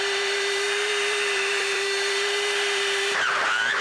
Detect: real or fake fake